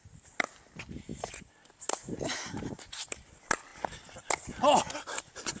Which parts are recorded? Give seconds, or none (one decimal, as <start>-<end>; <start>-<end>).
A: 0.0-5.6